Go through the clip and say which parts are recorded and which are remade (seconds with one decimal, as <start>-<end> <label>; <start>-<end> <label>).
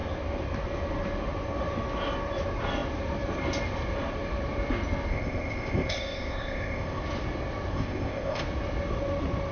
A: 0.0-5.1 recorded; 5.1-7.0 remade; 7.0-7.7 recorded; 7.7-8.4 remade; 8.4-9.5 recorded